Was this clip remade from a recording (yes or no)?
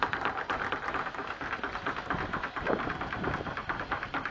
no